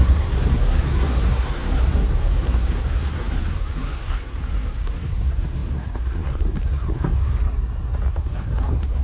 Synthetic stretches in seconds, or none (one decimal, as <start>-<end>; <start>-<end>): 0.0-7.4; 8.1-9.0